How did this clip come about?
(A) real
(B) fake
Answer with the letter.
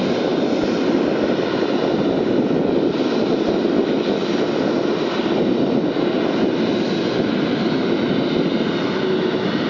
A